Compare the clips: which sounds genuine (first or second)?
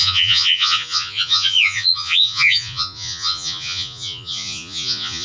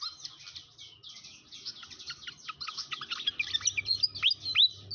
second